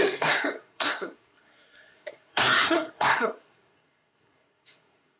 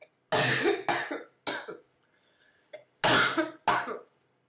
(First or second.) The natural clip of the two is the second